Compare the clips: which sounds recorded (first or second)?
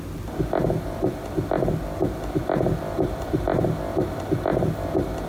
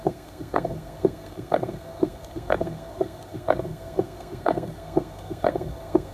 first